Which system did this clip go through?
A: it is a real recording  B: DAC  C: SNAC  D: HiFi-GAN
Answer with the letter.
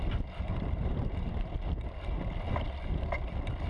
A